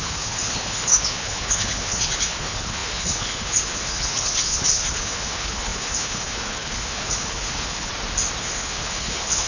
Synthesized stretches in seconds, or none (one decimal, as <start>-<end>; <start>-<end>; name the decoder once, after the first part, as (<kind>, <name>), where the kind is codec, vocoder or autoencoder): 0.0-7.9 (codec, HILCodec); 8.4-9.5